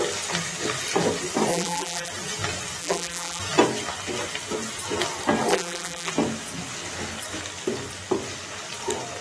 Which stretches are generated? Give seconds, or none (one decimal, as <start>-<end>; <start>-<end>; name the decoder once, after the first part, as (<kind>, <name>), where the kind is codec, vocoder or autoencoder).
1.5-2.1 (vocoder, BigVGAN v2); 2.8-3.4; 5.5-6.1

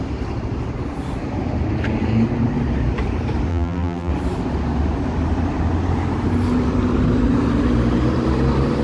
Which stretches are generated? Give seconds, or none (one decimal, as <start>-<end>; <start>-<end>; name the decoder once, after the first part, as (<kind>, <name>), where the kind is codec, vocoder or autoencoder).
3.5-4.1 (vocoder, BigVGAN v2)

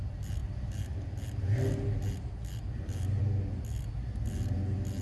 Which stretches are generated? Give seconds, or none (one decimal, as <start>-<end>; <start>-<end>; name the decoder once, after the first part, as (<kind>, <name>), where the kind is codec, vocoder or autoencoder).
none

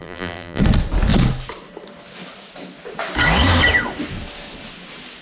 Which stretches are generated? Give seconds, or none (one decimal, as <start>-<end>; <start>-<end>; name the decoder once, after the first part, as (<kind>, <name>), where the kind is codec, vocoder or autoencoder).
0.0-0.6 (vocoder, BigVGAN v2)

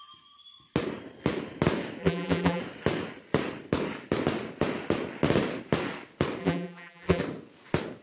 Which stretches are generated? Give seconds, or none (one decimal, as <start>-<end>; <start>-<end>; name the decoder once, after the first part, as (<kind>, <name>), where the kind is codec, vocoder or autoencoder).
2.0-2.6 (vocoder, BigVGAN v2); 6.4-7.2